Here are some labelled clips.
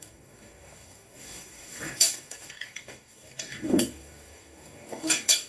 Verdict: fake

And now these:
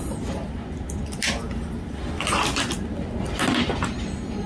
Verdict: real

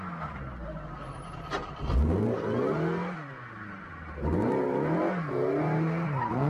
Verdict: real